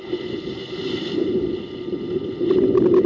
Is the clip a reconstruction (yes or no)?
no